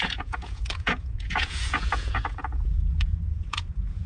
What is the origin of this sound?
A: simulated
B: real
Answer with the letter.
A